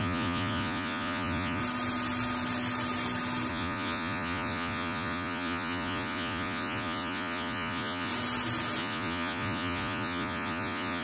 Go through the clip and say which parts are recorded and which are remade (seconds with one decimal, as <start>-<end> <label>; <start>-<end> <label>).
0.0-1.6 remade; 1.6-3.5 recorded; 3.5-8.1 remade; 8.1-8.8 recorded; 8.8-11.0 remade